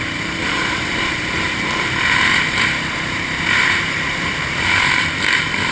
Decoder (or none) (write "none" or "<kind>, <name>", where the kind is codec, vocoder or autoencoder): vocoder, BigVGAN v2